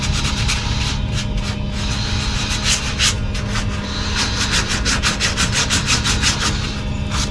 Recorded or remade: recorded